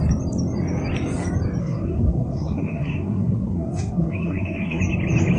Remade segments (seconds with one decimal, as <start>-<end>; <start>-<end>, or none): 1.6-4.8